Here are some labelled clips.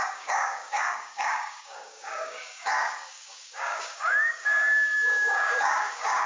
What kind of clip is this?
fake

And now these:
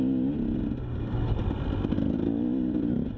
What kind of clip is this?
real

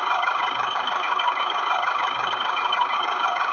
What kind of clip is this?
fake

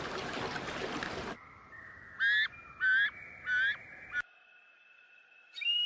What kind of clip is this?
real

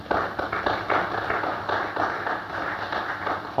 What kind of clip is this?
real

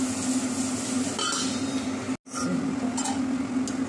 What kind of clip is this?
real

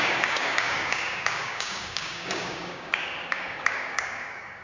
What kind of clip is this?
fake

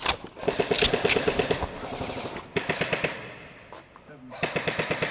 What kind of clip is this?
real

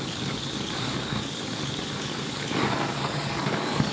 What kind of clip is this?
fake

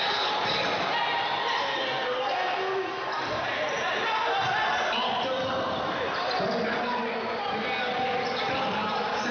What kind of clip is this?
real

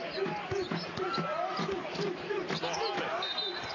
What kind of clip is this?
real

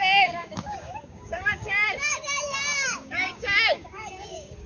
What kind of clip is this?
fake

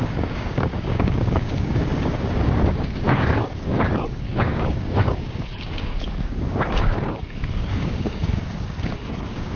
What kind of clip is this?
fake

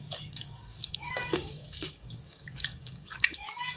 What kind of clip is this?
fake